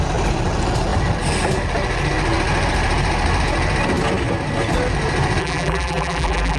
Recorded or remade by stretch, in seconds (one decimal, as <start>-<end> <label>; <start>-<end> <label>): 0.0-5.4 recorded; 5.4-6.6 remade